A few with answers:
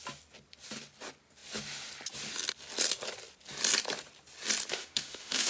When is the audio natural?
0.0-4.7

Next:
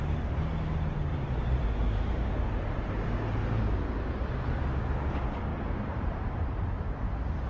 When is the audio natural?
0.0-1.1; 2.3-3.4; 3.9-5.5; 7.1-7.5

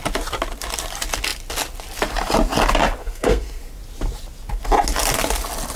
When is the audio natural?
0.0-3.0; 3.6-5.8